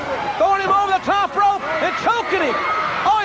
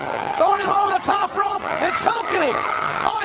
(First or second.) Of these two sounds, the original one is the first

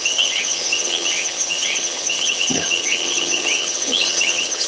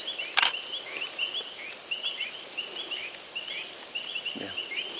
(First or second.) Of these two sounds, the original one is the second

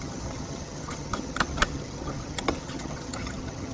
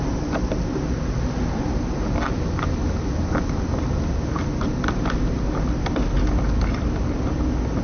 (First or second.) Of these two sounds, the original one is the second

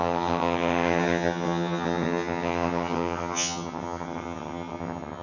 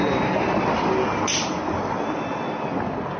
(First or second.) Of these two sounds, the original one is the second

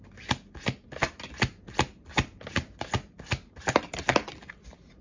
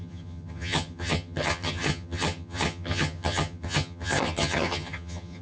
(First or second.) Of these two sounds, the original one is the first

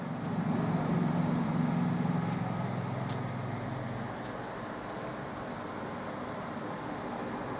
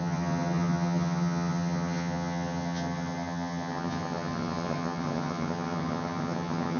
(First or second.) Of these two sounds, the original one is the first